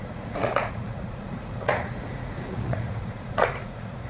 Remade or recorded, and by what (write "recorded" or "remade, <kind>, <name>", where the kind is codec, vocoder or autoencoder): remade, vocoder, Vocos